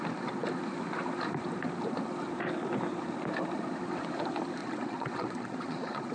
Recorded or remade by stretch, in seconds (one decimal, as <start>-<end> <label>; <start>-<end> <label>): 0.0-4.6 recorded; 4.6-6.1 remade